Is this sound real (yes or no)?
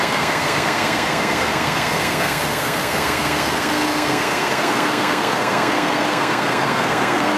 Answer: no